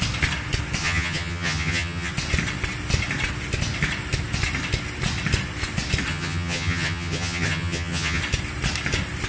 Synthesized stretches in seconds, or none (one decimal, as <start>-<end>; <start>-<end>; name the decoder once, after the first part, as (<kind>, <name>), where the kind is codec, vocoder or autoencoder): 0.8-2.1 (vocoder, HiFi-GAN); 6.1-8.2